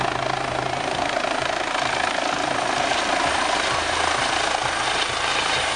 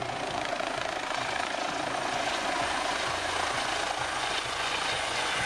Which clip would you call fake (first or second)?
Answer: second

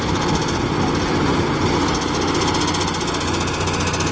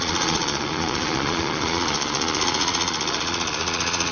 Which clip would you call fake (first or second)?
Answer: second